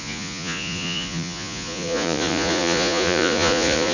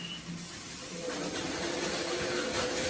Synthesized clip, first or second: first